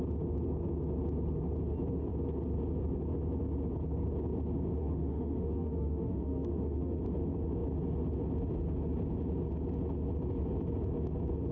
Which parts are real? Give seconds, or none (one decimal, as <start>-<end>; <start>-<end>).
0.0-4.8; 7.0-11.5